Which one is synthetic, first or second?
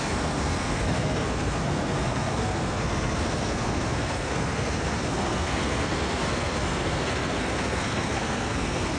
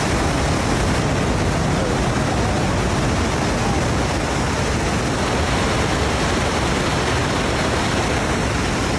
first